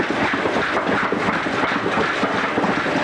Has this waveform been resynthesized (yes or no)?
no